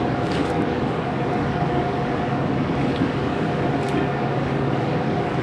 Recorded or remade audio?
remade